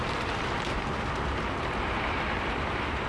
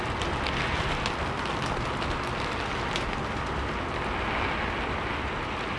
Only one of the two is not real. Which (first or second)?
first